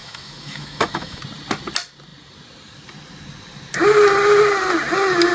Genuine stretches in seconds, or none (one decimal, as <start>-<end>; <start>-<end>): 1.2-5.3